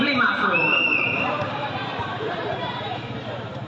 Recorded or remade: remade